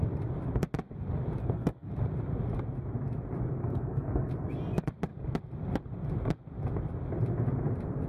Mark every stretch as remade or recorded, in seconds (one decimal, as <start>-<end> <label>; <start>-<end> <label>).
0.0-1.4 recorded; 1.4-1.9 remade; 1.9-3.6 recorded; 3.6-4.3 remade; 4.3-8.1 recorded